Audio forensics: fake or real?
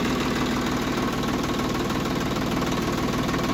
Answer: real